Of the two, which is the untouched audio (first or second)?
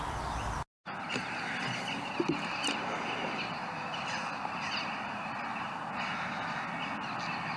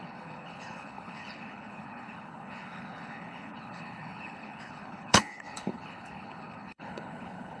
first